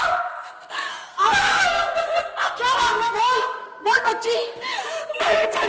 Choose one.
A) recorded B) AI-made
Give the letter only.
B